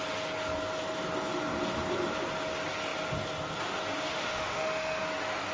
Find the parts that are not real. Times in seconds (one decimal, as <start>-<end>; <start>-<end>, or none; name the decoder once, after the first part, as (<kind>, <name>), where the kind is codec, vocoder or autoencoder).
4.1-5.0 (autoencoder, DAC-VAE)